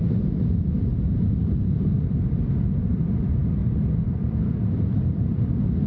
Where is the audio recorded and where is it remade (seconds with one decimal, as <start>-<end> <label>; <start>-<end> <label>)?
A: 0.0-1.4 recorded; 1.4-2.9 remade; 2.9-3.6 recorded; 3.6-5.9 remade